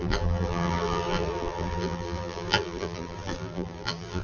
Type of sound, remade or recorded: remade